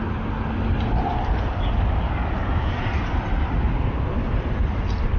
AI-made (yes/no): no